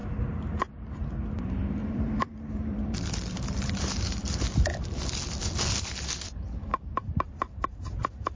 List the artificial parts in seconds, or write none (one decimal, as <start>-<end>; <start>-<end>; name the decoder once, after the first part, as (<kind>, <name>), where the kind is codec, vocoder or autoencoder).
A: 1.8-5.1 (vocoder, BigVGAN v2); 6.7-7.9